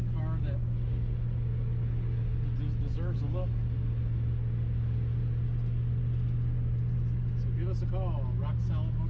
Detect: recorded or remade recorded